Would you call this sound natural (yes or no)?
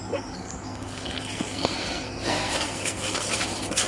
no